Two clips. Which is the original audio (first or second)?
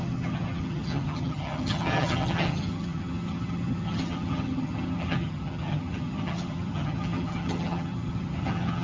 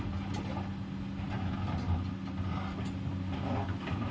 second